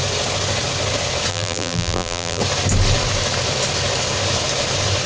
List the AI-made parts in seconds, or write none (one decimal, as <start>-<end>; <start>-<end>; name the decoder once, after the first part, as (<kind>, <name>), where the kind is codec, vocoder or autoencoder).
1.3-2.4 (vocoder, BigVGAN v2)